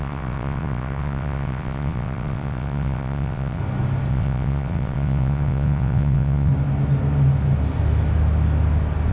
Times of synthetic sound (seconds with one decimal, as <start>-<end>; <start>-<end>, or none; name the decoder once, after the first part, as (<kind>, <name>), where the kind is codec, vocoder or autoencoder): 0.0-3.6 (vocoder, WaveNeXt); 4.1-6.5